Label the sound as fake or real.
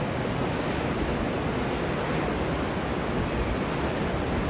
real